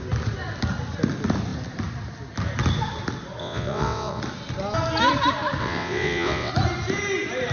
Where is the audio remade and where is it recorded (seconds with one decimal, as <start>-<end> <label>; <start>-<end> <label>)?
0.0-3.4 recorded; 3.4-4.2 remade; 4.2-5.6 recorded; 5.6-6.5 remade; 6.5-7.5 recorded